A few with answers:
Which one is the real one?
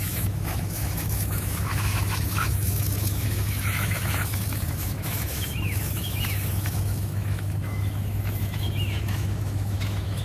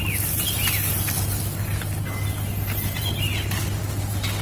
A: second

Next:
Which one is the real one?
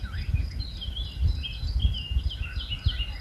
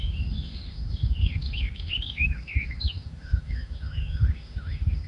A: first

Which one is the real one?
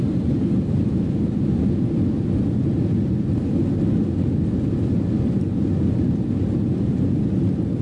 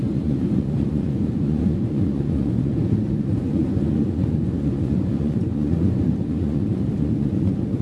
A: first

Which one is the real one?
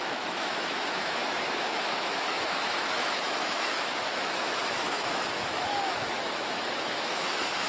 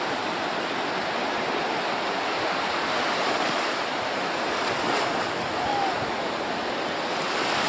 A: second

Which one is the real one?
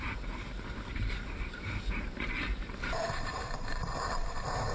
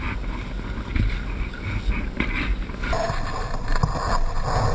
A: second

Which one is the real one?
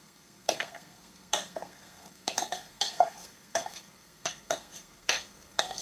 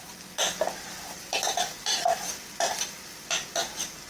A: second